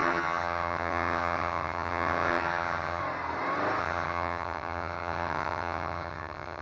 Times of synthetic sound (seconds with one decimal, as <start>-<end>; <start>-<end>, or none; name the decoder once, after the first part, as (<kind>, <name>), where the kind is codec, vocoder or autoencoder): 0.0-3.0 (vocoder, HiFi-GAN); 3.8-6.6